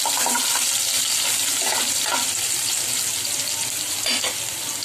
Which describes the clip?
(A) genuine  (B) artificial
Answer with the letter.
A